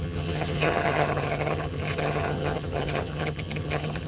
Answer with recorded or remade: remade